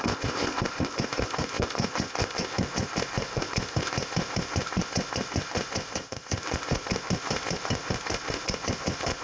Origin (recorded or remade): remade